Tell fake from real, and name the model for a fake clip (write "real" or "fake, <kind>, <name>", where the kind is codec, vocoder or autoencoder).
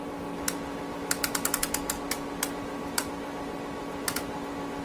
real